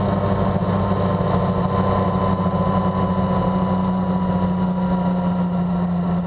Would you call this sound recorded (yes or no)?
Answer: yes